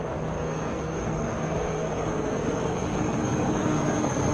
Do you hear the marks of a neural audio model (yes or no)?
yes